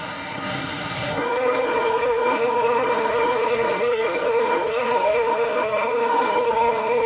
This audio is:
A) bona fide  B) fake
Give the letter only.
B